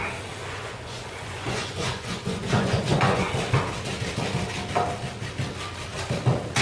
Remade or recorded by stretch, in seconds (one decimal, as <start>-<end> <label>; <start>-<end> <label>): 0.0-0.4 recorded; 0.4-3.3 remade; 3.3-6.6 recorded